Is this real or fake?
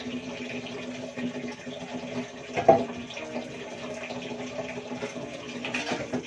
real